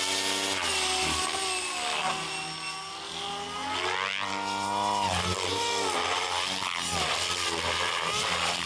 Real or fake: real